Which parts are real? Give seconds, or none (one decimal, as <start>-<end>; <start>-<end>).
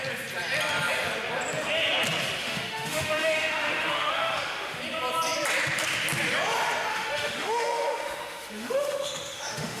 0.0-2.4; 4.8-6.9